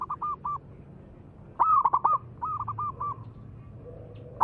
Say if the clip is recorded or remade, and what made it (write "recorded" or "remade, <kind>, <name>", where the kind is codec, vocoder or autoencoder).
recorded